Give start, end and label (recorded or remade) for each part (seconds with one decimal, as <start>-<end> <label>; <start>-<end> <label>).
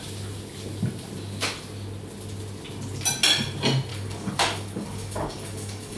0.0-3.9 recorded; 3.9-6.0 remade